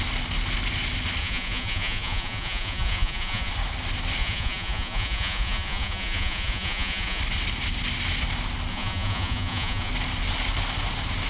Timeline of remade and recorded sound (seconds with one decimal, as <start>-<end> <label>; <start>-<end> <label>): 0.0-1.2 recorded; 1.2-3.5 remade; 3.5-4.2 recorded; 4.2-7.2 remade; 7.2-8.7 recorded; 8.7-9.9 remade; 9.9-11.3 recorded